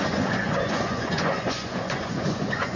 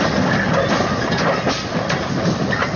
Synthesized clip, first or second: first